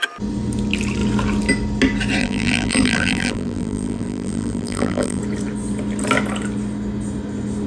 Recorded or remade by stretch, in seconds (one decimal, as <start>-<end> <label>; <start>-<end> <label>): 0.0-2.2 recorded; 2.2-5.2 remade; 5.2-7.7 recorded